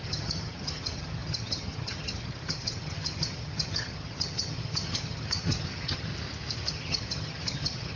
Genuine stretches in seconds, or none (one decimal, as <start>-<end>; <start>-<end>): 6.1-6.7